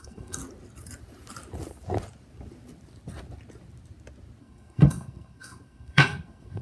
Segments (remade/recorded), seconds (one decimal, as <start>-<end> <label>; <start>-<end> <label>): 0.0-0.4 remade; 0.4-4.4 recorded; 4.4-6.6 remade